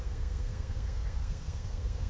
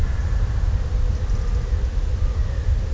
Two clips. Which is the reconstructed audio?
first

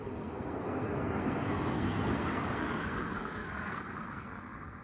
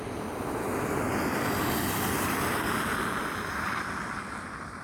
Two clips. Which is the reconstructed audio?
first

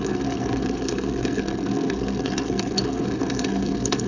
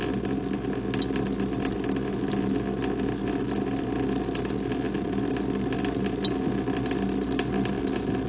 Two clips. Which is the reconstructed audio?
first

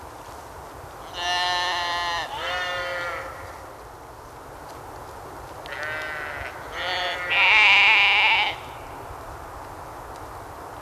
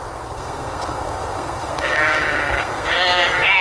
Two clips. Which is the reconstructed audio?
second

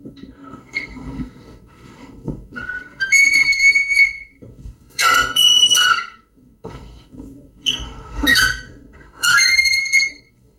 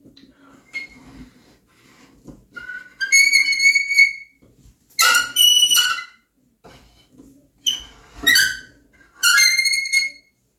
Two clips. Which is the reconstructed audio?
first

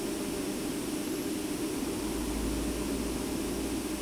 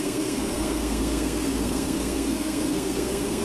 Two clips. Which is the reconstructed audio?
second